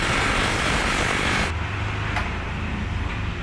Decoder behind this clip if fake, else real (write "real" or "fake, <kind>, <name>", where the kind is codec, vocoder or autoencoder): real